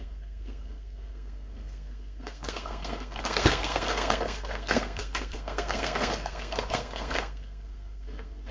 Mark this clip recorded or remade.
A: remade